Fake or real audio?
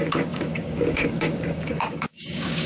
fake